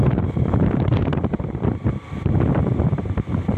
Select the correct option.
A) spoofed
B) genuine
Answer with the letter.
A